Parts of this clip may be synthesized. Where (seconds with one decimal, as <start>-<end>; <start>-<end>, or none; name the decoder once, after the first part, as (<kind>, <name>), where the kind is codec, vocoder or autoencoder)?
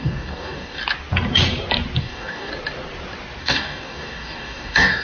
0.0-0.8 (codec, DAC); 2.0-2.5; 3.4-5.0